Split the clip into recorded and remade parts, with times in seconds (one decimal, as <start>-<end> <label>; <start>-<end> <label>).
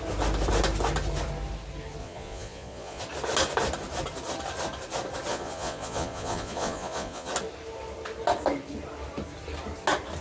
0.0-2.0 recorded; 2.0-3.0 remade; 3.0-5.3 recorded; 5.3-7.3 remade; 7.3-10.2 recorded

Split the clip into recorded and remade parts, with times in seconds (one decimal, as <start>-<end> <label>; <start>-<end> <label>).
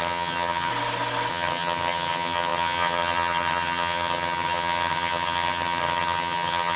0.0-0.7 remade; 0.7-1.3 recorded; 1.3-6.8 remade